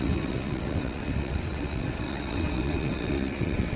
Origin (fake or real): fake